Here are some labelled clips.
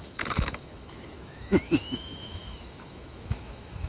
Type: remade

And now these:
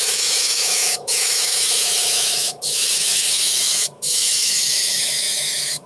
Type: remade